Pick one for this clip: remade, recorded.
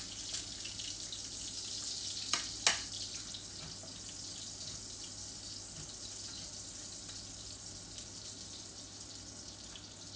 recorded